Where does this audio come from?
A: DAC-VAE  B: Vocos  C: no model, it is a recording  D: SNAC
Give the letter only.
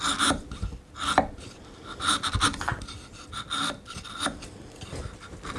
C